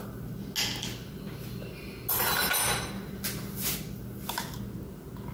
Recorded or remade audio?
recorded